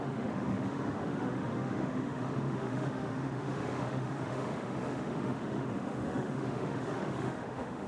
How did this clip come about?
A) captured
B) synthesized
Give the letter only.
B